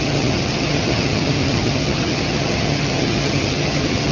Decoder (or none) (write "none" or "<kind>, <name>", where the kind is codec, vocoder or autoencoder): vocoder, HiFi-GAN